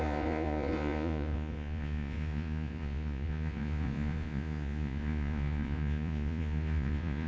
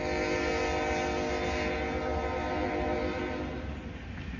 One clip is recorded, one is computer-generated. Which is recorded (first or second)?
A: second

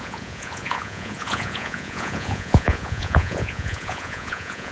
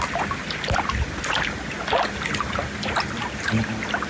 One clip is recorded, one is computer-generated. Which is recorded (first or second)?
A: second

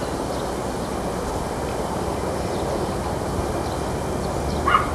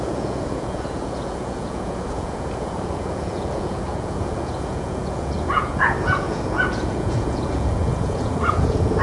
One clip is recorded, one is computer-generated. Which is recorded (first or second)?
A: first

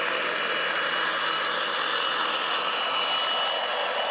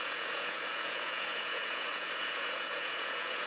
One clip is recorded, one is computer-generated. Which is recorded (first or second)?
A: first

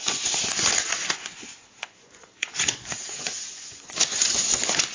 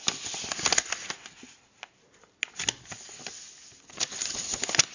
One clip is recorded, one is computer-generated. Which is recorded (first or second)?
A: second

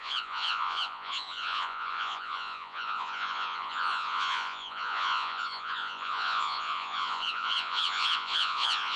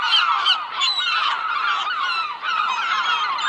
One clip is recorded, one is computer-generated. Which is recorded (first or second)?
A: second